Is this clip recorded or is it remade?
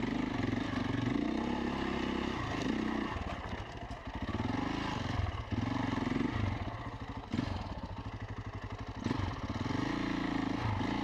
recorded